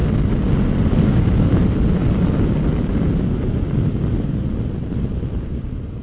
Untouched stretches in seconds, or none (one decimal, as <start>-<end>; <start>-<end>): 0.0-6.0